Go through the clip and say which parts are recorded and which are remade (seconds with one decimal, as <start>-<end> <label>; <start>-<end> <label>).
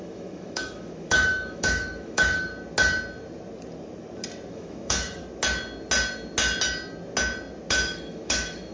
0.0-2.5 remade; 2.5-4.5 recorded; 4.5-5.2 remade; 5.2-7.7 recorded; 7.7-8.7 remade